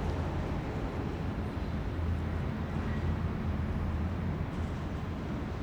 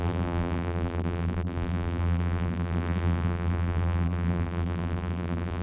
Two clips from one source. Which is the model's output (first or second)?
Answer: second